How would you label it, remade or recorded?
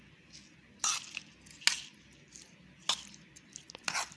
recorded